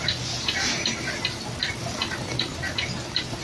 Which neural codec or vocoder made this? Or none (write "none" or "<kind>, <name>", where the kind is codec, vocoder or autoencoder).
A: none